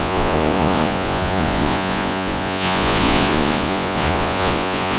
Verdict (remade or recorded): remade